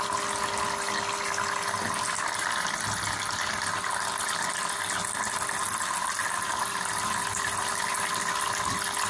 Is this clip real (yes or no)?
yes